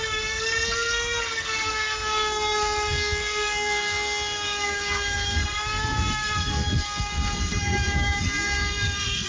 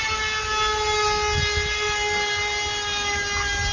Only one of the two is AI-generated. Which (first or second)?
first